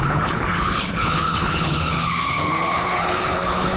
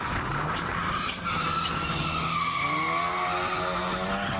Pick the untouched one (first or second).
second